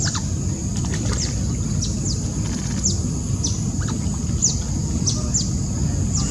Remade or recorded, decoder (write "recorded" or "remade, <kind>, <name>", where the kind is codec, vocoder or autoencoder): recorded